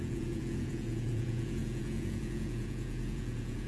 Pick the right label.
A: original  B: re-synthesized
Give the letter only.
B